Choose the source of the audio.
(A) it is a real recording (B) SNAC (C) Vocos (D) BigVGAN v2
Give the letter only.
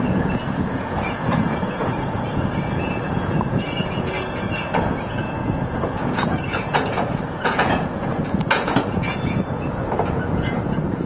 C